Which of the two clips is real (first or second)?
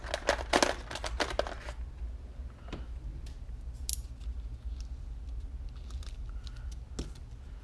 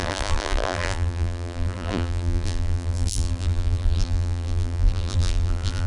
first